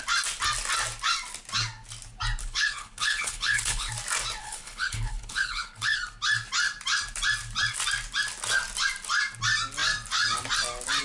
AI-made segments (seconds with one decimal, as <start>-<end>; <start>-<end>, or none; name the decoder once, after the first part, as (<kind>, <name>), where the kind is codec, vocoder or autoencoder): 2.4-3.9 (codec, HILCodec); 4.4-6.0